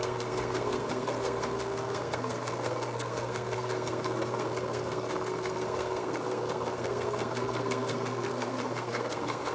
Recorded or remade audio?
remade